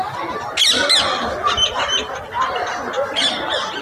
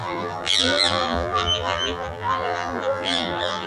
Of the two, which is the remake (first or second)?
second